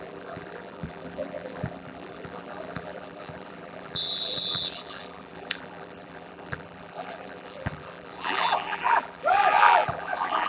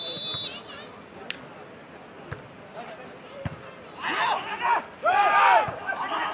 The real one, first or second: second